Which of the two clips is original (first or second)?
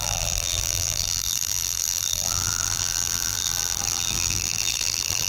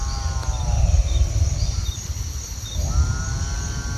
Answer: second